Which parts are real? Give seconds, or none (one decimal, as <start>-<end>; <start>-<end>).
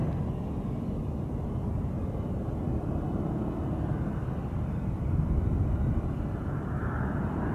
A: 0.0-4.5